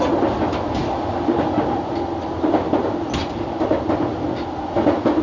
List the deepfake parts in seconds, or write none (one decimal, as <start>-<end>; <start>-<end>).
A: 3.2-3.8